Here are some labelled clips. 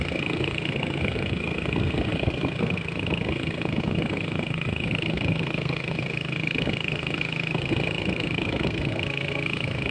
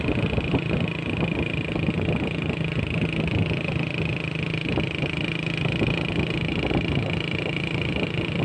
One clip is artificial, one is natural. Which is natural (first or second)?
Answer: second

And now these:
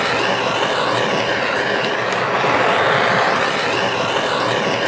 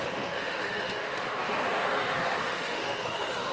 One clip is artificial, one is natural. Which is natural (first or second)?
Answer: first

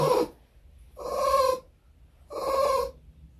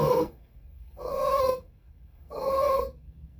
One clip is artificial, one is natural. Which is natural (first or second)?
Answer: first